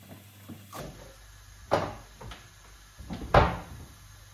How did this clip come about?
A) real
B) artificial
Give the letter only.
A